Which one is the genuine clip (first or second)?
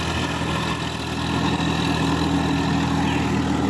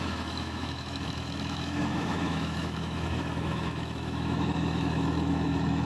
first